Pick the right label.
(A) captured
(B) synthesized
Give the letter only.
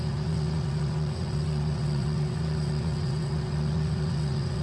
B